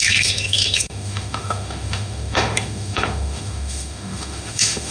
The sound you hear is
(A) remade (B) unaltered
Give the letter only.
A